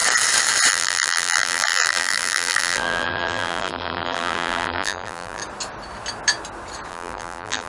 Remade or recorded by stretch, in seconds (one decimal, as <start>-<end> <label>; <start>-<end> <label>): 0.0-0.7 recorded; 0.7-5.4 remade; 5.4-6.9 recorded; 6.9-7.7 remade